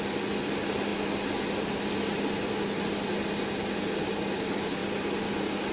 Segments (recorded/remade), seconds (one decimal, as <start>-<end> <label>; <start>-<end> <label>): 0.0-5.7 recorded